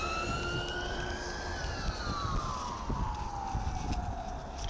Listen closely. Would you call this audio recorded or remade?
recorded